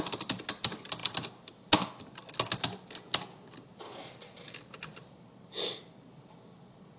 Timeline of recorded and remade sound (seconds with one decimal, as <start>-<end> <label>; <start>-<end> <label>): 0.0-7.0 recorded